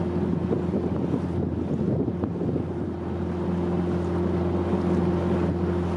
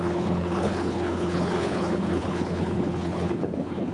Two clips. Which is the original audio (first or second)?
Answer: first